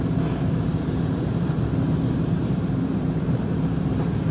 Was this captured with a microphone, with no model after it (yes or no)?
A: no